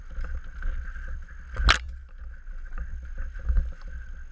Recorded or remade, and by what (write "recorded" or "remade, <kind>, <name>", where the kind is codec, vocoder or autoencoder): recorded